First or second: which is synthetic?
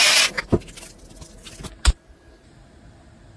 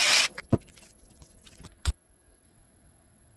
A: second